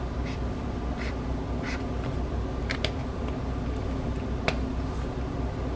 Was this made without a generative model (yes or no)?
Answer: yes